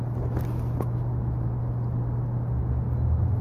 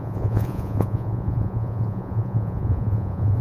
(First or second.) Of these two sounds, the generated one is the second